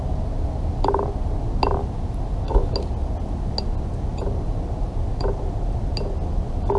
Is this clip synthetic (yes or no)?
no